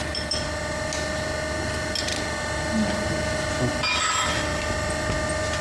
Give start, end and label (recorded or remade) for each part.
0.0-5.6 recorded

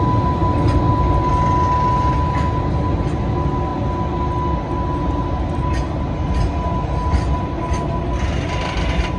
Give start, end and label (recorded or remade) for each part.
0.0-9.2 recorded

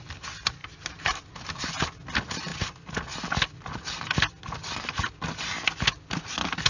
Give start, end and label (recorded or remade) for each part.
0.0-0.6 recorded; 0.6-1.7 remade; 1.7-6.7 recorded